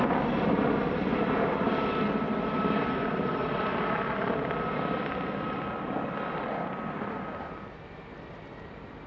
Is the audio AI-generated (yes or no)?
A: no